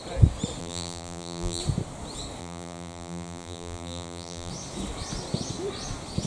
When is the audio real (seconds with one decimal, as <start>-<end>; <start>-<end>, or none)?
0.0-0.6; 1.6-2.4; 4.5-6.3